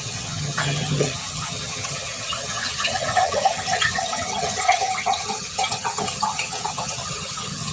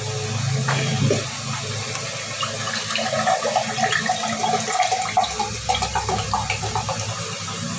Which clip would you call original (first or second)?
second